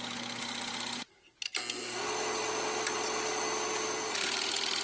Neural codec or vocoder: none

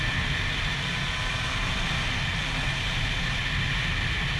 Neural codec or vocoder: none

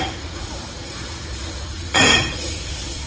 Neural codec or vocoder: vocoder, Vocos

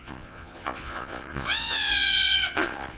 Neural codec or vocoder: vocoder, Vocos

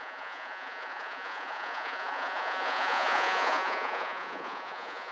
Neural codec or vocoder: vocoder, Vocos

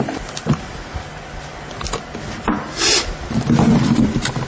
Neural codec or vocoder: none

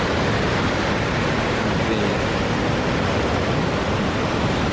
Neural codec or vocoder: none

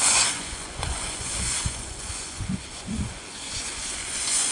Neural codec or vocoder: vocoder, Vocos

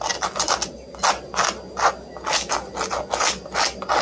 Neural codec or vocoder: none